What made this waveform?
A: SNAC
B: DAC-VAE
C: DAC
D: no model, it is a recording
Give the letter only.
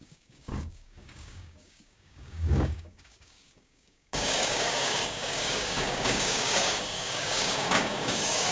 C